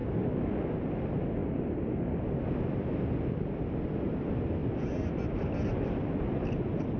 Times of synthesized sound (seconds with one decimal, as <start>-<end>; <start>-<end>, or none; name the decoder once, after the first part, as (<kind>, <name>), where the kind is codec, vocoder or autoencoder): 4.6-6.4 (vocoder, BigVGAN v2)

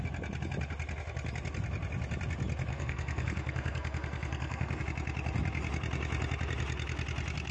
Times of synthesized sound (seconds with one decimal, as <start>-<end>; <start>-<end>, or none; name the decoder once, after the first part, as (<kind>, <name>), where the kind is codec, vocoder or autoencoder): 2.7-4.8 (codec, SNAC)

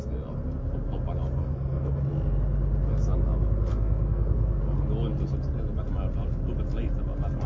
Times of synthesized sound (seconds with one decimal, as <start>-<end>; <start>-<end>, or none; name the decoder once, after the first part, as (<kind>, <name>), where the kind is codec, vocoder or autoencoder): 1.4-1.9 (codec, SNAC); 3.7-4.6

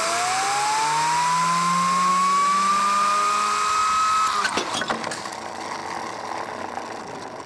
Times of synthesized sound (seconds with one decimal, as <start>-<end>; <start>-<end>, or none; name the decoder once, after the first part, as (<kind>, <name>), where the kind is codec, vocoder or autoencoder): 2.1-2.7 (autoencoder, DAC-VAE)

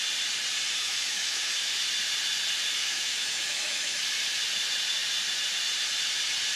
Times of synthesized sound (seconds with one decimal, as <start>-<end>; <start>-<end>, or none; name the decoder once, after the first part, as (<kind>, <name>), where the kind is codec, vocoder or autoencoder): 0.8-1.7 (autoencoder, DAC-VAE); 2.8-4.0

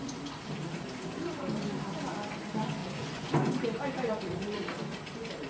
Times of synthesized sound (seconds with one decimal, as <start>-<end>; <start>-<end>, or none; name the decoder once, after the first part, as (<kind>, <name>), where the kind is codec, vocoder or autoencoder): 2.8-3.5 (vocoder, Vocos)